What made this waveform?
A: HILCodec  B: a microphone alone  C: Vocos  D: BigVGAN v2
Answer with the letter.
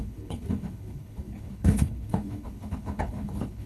A